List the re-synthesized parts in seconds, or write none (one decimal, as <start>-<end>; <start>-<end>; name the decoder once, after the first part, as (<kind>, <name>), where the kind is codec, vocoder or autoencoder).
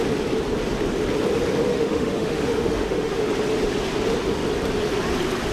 1.7-3.3 (autoencoder, DAC-VAE)